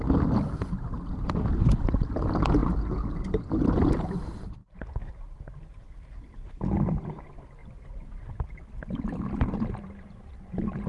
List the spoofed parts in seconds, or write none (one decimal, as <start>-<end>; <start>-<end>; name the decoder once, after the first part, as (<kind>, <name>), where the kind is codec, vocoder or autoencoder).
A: 4.6-6.5 (vocoder, BigVGAN v2); 7.6-9.2